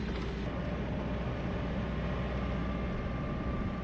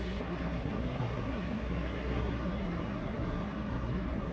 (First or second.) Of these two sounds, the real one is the first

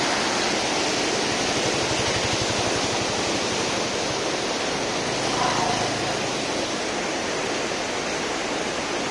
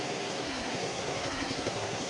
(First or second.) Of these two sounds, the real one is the first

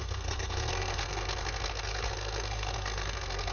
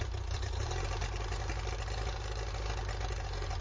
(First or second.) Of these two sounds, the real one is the second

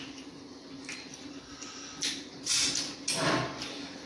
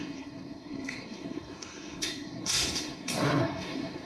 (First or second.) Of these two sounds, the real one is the first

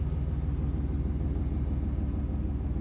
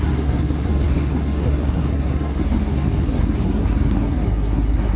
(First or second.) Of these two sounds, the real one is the first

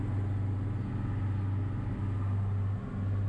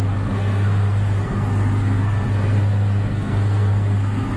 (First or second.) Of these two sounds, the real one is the first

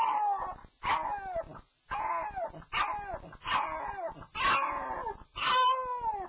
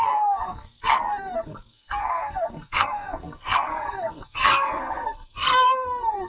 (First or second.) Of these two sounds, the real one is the first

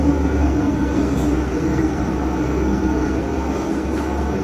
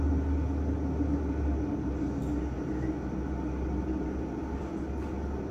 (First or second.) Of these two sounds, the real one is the second